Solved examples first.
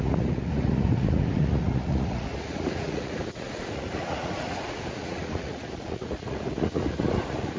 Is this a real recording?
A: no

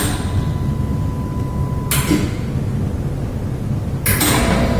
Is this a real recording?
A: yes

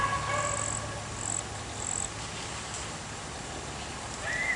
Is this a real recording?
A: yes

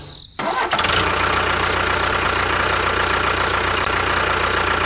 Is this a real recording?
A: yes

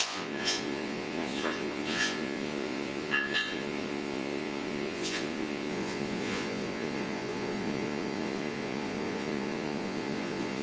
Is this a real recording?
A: no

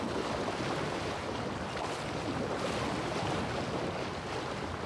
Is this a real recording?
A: yes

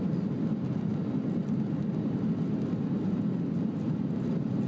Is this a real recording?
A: yes